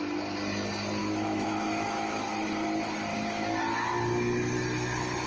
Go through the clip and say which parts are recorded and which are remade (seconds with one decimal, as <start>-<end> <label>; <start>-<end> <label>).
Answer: 0.0-1.0 recorded; 1.0-2.3 remade; 2.3-3.1 recorded; 3.1-3.6 remade; 3.6-5.3 recorded